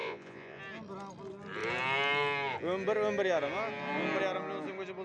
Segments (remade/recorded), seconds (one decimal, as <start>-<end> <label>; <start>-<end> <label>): 0.0-0.6 remade; 0.6-5.0 recorded